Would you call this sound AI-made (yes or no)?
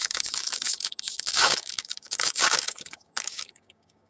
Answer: yes